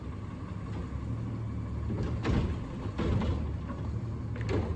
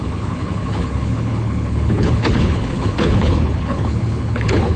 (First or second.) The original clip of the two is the first